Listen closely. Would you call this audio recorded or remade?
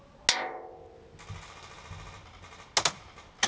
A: recorded